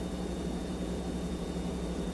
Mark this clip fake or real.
fake